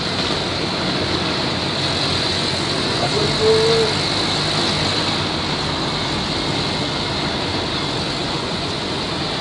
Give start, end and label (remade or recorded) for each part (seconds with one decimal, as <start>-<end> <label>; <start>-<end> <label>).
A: 0.0-2.1 recorded; 2.1-3.2 remade; 3.2-8.2 recorded; 8.2-9.0 remade; 9.0-9.4 recorded